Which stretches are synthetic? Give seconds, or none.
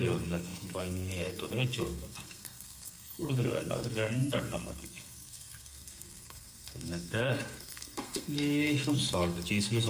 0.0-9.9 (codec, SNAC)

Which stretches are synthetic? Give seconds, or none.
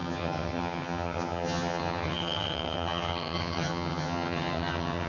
0.0-5.1 (vocoder, HiFi-GAN)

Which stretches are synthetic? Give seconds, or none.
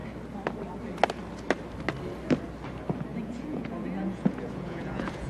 3.1-5.3 (vocoder, Vocos)